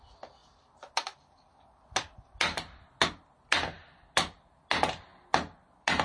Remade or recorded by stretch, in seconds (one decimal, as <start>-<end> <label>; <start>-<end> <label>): 0.0-6.0 recorded

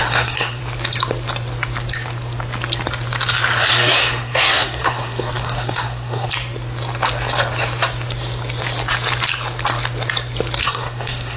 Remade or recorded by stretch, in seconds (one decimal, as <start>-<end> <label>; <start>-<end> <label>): 0.0-0.6 remade; 0.6-3.6 recorded; 3.6-6.3 remade; 6.3-10.6 recorded; 10.6-11.4 remade

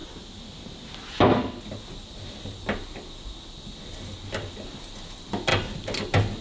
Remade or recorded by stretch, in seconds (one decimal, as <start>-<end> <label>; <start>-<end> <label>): 0.0-6.4 recorded

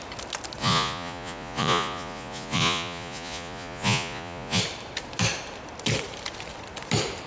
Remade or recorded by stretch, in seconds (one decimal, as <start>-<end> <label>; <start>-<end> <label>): 0.0-0.6 recorded; 0.6-4.6 remade; 4.6-7.3 recorded

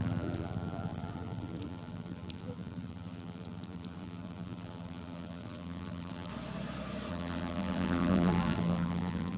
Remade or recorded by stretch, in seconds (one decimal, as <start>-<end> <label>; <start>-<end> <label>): 0.0-6.3 remade; 6.3-7.1 recorded; 7.1-9.4 remade

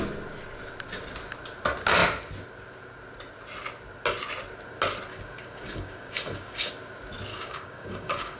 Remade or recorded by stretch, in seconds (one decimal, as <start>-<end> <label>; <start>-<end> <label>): 0.0-5.1 recorded; 5.1-6.7 remade; 6.7-7.3 recorded; 7.3-8.4 remade

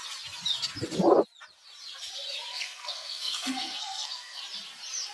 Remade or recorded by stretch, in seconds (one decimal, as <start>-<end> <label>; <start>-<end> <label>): 0.0-2.5 recorded; 2.5-4.4 remade; 4.4-5.1 recorded